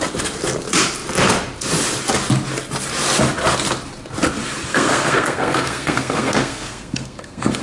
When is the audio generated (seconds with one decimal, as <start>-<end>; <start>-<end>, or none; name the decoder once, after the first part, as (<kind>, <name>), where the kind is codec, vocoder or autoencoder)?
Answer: 4.7-7.6 (codec, SNAC)